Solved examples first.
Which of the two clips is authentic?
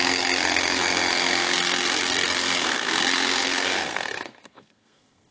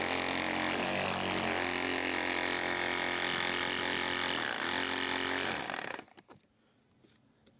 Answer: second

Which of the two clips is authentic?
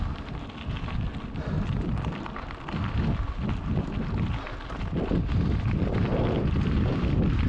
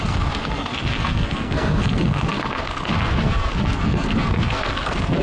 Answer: first